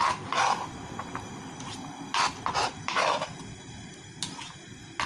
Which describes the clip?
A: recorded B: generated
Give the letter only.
A